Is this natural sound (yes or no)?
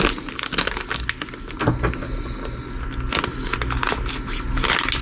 yes